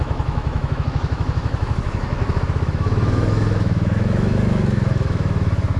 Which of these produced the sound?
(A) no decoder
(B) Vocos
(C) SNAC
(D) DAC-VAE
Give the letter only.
D